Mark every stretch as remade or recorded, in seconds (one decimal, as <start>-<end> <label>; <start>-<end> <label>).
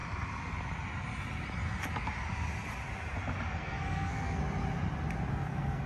0.0-3.5 recorded; 3.5-4.4 remade; 4.4-5.3 recorded; 5.3-5.9 remade